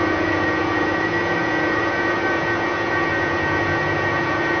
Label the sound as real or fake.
fake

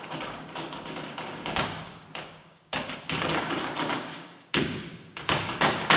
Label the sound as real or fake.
fake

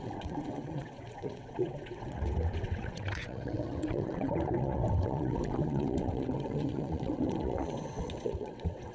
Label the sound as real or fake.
fake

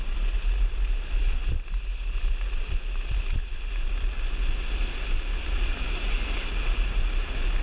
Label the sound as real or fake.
real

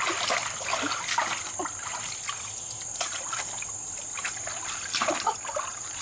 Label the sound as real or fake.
real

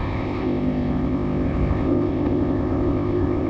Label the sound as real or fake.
fake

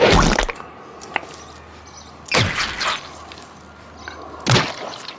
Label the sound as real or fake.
real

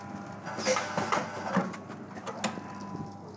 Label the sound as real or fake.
real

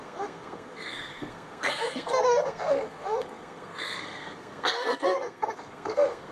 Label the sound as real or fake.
fake